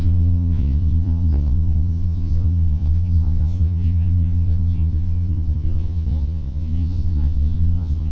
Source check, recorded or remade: remade